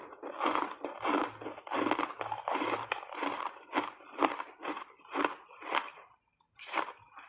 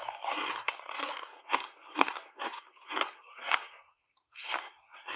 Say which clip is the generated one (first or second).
second